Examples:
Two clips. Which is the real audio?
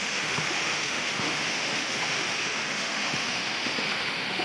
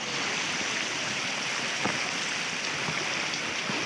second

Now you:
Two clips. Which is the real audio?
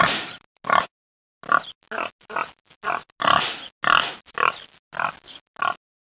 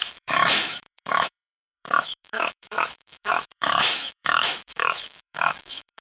first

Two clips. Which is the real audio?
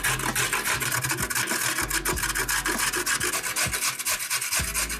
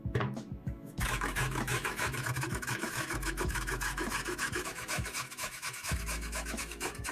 first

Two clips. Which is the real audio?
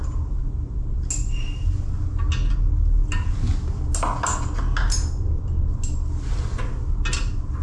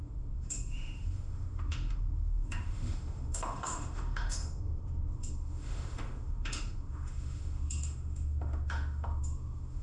first